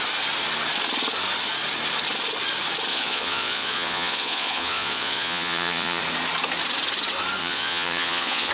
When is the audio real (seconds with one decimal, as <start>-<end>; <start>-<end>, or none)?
0.0-2.9; 6.0-7.4